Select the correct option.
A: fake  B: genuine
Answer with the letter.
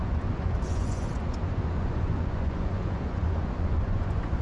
A